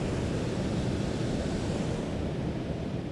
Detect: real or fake real